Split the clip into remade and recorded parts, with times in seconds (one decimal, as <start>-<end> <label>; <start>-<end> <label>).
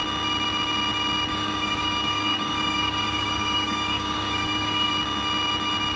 0.0-1.3 recorded; 1.3-4.9 remade; 4.9-6.0 recorded